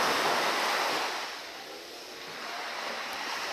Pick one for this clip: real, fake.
real